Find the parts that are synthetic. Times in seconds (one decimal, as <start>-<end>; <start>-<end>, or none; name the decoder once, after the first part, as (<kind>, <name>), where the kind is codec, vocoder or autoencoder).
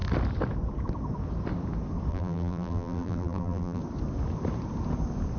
2.1-3.8 (vocoder, BigVGAN v2)